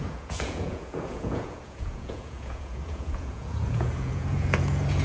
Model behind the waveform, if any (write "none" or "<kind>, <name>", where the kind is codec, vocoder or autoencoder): vocoder, Vocos